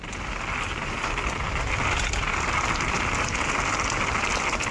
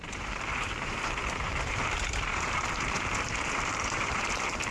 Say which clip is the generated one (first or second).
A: second